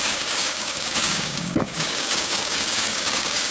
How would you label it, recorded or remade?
remade